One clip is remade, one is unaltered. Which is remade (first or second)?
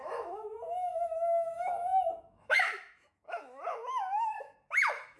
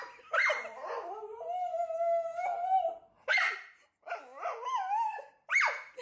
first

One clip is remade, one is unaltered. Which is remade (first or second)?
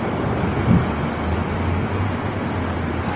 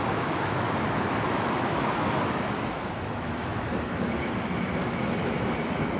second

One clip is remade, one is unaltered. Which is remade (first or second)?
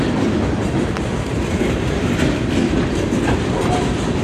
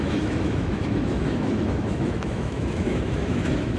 second